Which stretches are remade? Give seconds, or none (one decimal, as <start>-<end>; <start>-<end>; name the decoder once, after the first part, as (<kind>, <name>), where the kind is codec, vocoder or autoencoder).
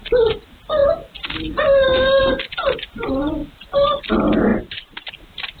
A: 4.5-5.1 (vocoder, BigVGAN v2)